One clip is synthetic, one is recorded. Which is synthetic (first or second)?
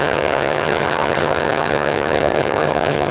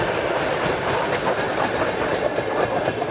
first